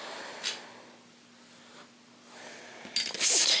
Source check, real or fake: real